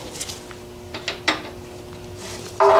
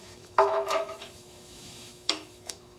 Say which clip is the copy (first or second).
second